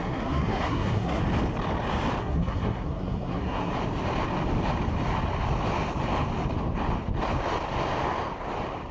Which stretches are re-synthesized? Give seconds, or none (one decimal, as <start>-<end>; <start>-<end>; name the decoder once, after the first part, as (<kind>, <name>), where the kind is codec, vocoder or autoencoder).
0.0-1.2 (codec, SNAC); 2.2-3.7